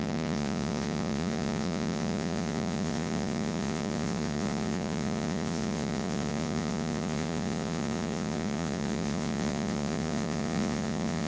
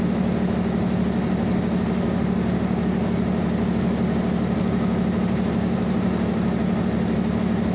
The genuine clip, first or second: second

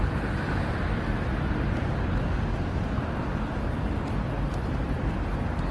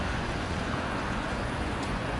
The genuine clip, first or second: first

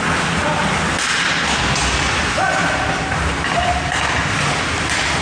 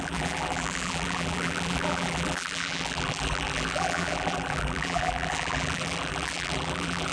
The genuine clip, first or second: first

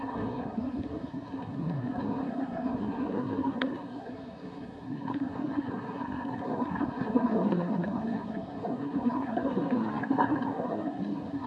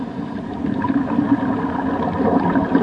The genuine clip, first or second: second